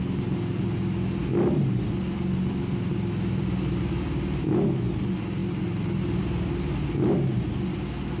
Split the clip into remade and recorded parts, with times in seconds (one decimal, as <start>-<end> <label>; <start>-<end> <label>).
0.0-8.2 recorded